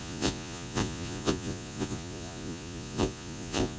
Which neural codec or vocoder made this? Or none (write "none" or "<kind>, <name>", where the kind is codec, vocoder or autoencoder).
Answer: vocoder, Vocos